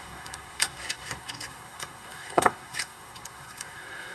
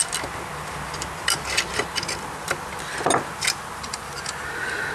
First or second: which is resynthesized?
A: first